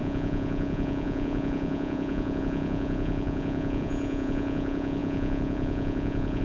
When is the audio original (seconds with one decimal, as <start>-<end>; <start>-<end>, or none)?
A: none